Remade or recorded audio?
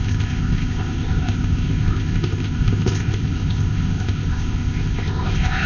remade